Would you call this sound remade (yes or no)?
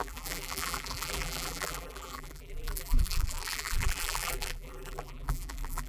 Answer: yes